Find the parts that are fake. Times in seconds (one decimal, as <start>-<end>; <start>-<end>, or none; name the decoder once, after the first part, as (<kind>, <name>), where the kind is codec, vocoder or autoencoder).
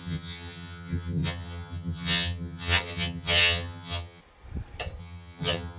0.0-4.2 (vocoder, HiFi-GAN); 5.0-5.8